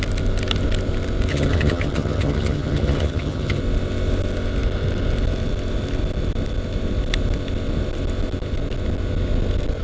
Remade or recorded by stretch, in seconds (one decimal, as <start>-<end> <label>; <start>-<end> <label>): 0.0-1.3 recorded; 1.3-3.6 remade; 3.6-9.8 recorded